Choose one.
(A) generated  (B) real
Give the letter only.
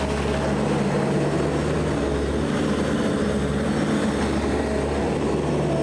B